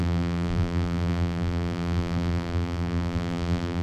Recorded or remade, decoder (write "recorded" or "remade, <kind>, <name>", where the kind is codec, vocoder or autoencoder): remade, vocoder, BigVGAN v2